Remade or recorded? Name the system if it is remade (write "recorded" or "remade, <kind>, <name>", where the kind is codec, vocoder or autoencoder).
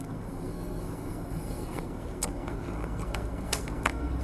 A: remade, codec, SNAC